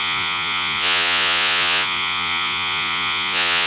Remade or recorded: remade